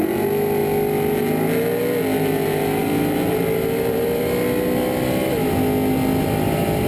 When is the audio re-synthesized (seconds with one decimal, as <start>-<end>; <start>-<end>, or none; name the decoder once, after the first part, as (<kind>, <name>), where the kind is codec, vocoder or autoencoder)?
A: 2.8-4.2 (vocoder, BigVGAN v2)

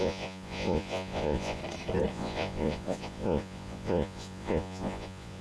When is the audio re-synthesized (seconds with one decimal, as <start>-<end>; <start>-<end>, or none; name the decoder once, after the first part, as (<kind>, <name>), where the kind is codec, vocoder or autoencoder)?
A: 0.0-1.6 (vocoder, Vocos); 2.1-5.4

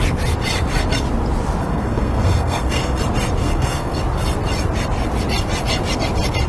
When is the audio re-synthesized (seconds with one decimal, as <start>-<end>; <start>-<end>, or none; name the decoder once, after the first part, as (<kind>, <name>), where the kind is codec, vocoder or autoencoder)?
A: 1.6-3.0 (codec, SNAC); 3.4-4.0